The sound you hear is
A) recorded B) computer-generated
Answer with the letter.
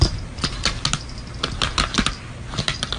A